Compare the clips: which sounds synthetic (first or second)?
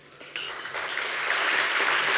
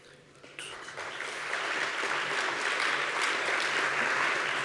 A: second